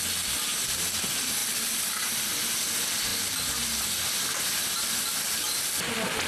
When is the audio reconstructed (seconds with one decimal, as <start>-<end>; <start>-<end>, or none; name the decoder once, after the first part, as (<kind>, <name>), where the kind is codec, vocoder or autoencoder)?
none